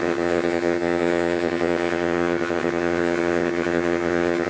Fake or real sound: fake